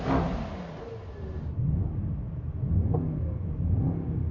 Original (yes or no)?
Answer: yes